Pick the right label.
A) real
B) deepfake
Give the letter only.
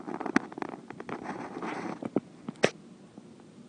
A